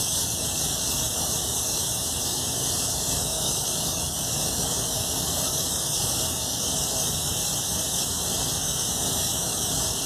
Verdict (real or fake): fake